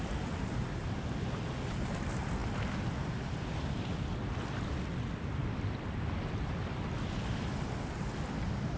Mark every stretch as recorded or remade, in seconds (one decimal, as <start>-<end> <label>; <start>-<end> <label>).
0.0-8.8 recorded